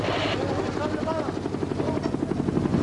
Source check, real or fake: real